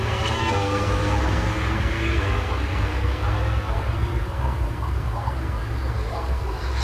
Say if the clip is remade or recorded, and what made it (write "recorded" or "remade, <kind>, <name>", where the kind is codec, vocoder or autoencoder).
remade, codec, SNAC